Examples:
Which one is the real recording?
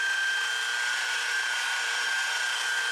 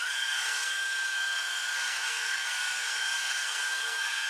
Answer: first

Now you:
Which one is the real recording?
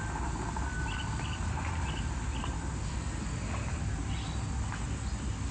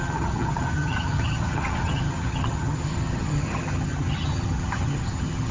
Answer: first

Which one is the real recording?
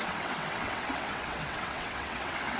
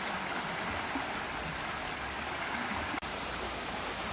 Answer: second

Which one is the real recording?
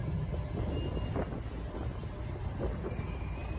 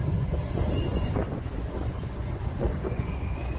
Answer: first